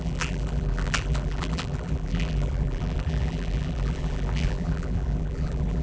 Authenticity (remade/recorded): remade